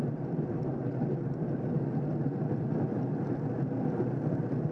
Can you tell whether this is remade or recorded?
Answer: recorded